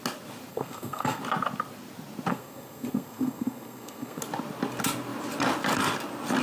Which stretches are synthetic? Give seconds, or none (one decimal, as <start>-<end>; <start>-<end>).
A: 0.5-1.2; 2.3-4.2